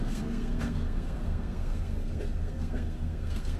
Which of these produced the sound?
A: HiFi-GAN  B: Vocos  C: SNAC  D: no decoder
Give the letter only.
C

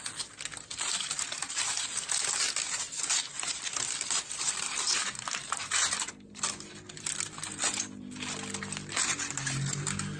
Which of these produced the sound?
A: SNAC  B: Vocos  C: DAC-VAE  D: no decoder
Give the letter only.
D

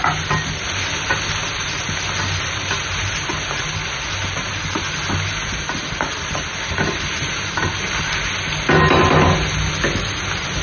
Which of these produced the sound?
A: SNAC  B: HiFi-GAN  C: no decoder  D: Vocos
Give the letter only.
C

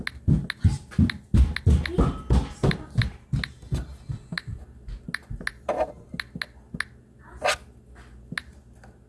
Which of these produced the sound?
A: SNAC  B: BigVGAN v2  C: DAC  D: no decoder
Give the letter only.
D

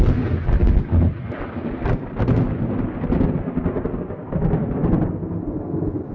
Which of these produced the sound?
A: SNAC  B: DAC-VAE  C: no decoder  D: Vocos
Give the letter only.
C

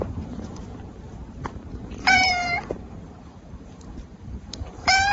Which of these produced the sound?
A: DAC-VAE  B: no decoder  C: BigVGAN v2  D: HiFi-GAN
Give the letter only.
C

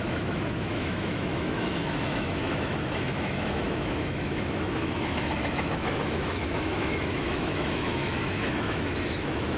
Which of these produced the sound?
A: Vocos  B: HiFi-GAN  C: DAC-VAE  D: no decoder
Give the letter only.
C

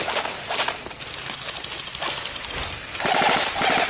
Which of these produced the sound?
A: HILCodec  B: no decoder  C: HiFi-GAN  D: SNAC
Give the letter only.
B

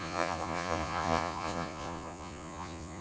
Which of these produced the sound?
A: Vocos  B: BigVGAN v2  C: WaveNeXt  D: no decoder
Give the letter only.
A